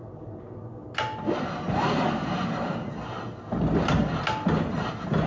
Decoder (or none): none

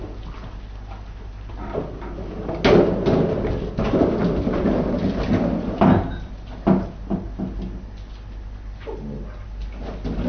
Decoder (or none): none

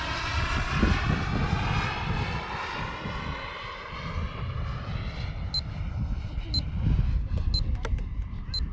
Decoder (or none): none